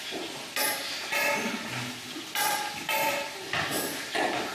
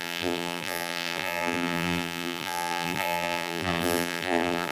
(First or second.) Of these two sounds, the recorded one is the first